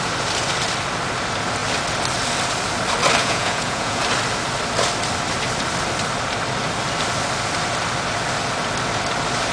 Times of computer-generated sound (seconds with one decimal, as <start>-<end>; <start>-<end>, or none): 3.2-4.0